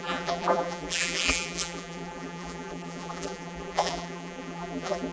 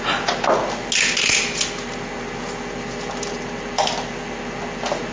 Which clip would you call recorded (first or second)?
second